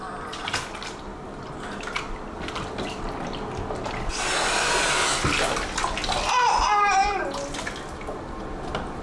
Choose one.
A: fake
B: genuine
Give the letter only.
B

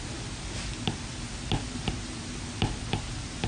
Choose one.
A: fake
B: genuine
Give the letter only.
B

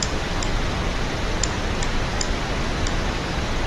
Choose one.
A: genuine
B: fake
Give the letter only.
B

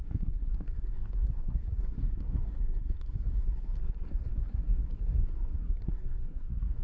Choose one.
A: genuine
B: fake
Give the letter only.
B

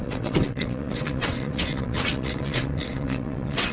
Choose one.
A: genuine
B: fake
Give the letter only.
B